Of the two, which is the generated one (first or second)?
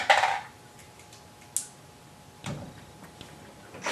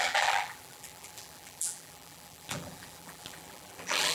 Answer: second